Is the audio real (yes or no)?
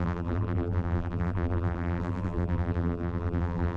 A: no